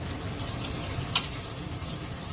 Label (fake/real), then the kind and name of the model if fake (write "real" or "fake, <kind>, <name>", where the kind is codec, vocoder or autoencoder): real